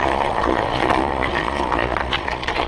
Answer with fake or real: fake